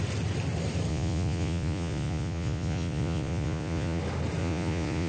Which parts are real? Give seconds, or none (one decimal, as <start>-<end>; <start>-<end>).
0.0-0.9; 4.0-4.4